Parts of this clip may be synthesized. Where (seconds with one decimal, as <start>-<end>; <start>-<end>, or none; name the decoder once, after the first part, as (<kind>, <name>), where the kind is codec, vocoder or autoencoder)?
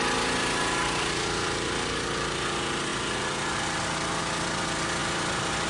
0.4-1.7 (vocoder, BigVGAN v2)